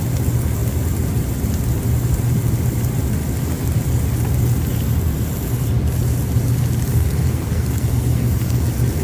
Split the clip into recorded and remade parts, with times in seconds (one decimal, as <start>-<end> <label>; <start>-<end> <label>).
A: 0.0-6.9 recorded; 6.9-8.6 remade; 8.6-9.0 recorded